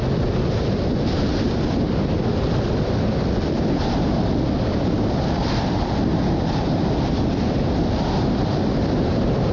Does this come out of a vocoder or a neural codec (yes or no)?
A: no